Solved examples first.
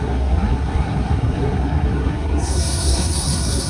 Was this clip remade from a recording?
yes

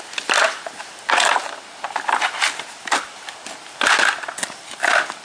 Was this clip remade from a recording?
no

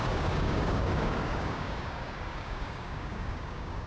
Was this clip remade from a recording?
yes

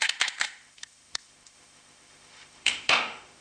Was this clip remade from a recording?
yes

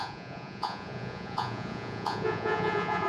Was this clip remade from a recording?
yes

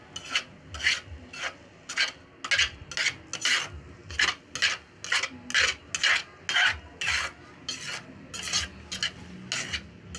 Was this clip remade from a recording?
no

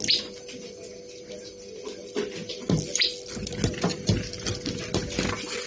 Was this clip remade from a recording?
no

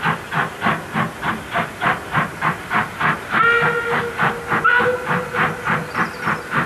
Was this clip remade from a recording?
no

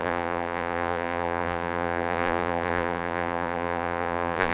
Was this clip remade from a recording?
yes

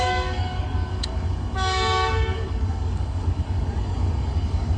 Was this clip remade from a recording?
yes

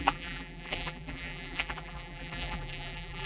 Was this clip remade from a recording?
yes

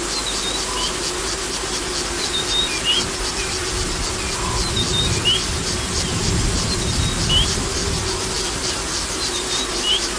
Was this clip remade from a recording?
no